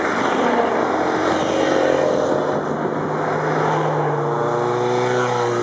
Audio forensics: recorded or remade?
recorded